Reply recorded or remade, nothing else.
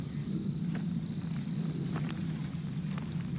recorded